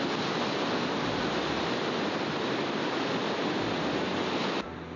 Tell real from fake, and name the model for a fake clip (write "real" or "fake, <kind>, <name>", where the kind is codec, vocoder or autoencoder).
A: real